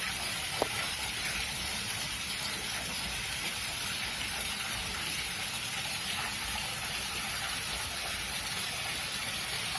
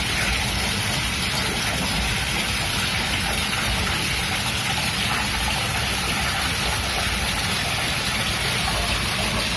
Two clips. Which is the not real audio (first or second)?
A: first